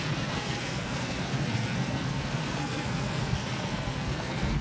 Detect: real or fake fake